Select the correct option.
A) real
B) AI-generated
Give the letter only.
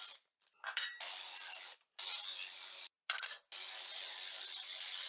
A